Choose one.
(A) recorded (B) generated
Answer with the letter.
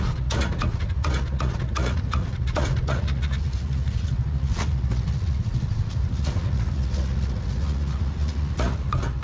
B